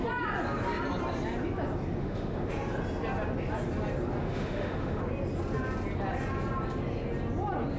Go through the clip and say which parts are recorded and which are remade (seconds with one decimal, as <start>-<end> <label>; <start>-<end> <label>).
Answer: 0.0-2.0 recorded; 2.0-2.5 remade; 2.5-4.2 recorded; 4.2-5.0 remade; 5.0-7.8 recorded